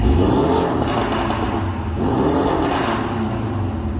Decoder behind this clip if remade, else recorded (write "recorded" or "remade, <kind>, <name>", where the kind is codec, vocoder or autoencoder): recorded